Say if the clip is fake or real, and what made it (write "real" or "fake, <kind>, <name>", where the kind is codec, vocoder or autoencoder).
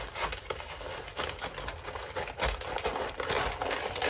real